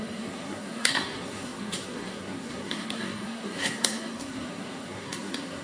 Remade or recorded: remade